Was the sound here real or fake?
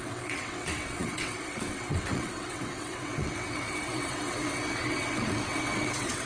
fake